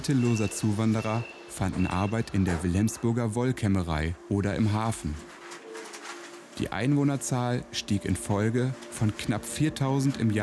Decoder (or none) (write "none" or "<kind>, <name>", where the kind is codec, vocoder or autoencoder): none